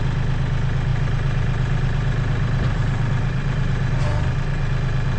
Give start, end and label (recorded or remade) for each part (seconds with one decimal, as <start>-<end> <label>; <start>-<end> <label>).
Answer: 0.0-0.9 recorded; 0.9-4.0 remade; 4.0-5.2 recorded